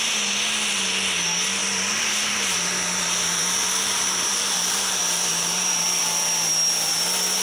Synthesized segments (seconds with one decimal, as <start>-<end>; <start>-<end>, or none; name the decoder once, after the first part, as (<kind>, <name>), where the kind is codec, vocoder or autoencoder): 1.6-6.0 (vocoder, BigVGAN v2)